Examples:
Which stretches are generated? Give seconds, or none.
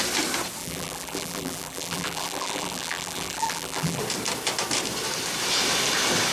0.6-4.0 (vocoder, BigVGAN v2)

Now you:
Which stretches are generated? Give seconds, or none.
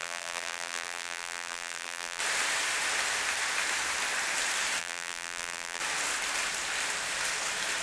0.0-2.2 (vocoder, BigVGAN v2); 4.8-5.8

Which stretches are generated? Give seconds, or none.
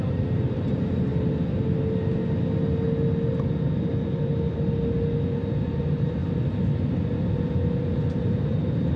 0.0-1.1 (vocoder, BigVGAN v2); 5.6-6.2; 8.1-9.0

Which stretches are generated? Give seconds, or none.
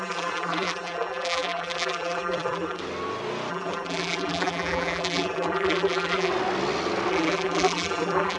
0.0-2.8 (vocoder, BigVGAN v2); 3.5-6.3; 7.1-8.4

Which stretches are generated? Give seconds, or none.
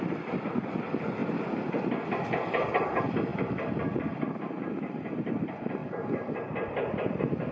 0.0-1.2 (vocoder, BigVGAN v2); 1.7-7.5